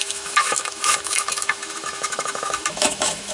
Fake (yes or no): yes